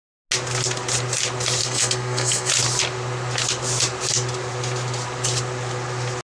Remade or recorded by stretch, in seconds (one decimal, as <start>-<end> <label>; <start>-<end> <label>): 0.0-1.6 recorded; 1.6-2.5 remade; 2.5-6.3 recorded